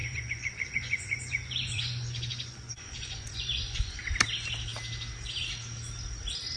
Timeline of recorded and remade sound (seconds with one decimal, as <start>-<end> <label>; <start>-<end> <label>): 0.0-4.0 remade; 4.0-6.6 recorded

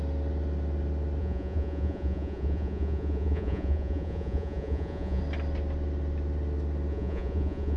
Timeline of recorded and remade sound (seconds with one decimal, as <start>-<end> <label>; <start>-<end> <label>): 0.0-1.2 recorded; 1.2-5.2 remade; 5.2-6.9 recorded; 6.9-7.8 remade

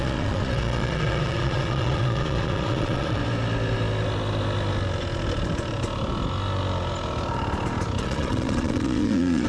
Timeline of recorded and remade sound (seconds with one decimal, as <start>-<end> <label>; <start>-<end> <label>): 0.0-3.2 remade; 3.2-8.0 recorded; 8.0-9.5 remade

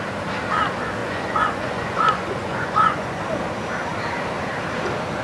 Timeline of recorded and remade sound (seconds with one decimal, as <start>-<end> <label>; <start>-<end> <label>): 0.0-1.0 recorded; 1.0-3.2 remade; 3.2-5.2 recorded

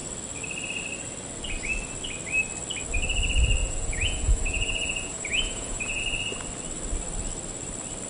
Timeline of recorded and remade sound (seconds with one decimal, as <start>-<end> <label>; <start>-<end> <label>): 0.0-3.6 recorded; 3.6-6.0 remade; 6.0-8.1 recorded

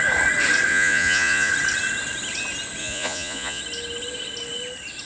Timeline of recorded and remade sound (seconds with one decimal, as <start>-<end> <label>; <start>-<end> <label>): 0.0-0.7 recorded; 0.7-1.5 remade; 1.5-2.8 recorded; 2.8-3.6 remade; 3.6-5.1 recorded